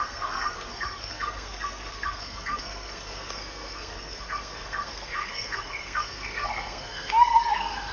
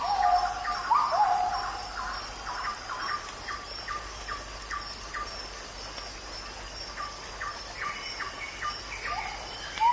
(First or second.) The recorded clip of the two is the second